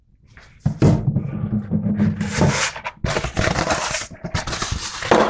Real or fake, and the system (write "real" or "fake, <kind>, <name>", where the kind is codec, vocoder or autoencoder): real